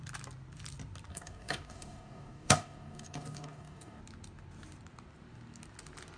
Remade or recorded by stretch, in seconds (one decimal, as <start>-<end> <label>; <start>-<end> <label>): 0.0-1.1 recorded; 1.1-4.0 remade; 4.0-6.2 recorded